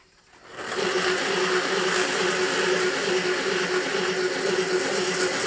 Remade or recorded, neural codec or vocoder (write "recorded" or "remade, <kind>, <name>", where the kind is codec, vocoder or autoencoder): recorded